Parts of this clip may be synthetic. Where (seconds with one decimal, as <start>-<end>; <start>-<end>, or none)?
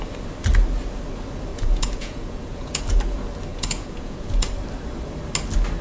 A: 1.5-2.8; 3.5-4.5